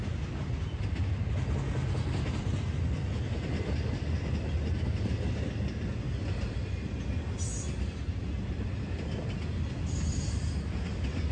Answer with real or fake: real